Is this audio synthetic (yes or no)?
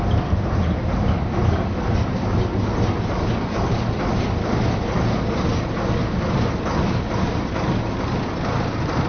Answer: no